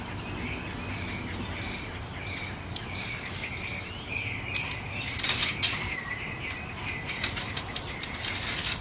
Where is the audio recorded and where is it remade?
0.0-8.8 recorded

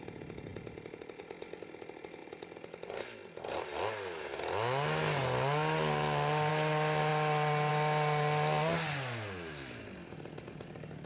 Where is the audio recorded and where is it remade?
0.0-11.1 recorded

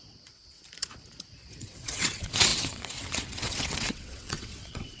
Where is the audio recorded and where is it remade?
0.0-0.6 remade; 0.6-1.5 recorded; 1.5-5.0 remade

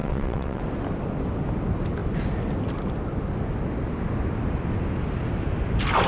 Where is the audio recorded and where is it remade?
0.0-0.6 remade; 0.6-6.1 recorded

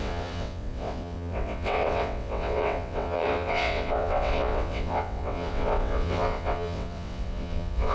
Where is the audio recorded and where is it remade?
0.0-7.9 remade

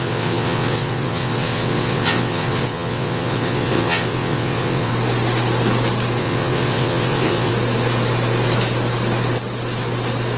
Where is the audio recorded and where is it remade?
0.0-4.9 remade; 4.9-6.2 recorded; 6.2-7.5 remade; 7.5-10.4 recorded